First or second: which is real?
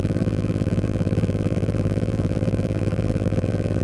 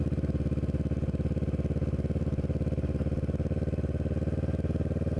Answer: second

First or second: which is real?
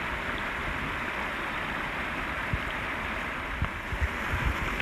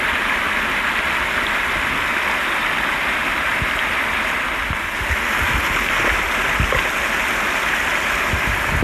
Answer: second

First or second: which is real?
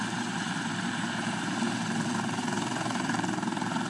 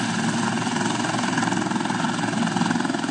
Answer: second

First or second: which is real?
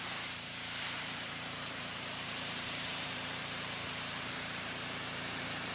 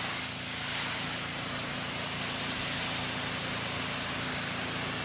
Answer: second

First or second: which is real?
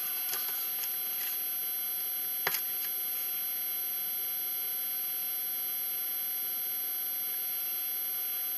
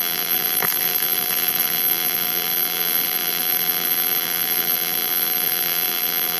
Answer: first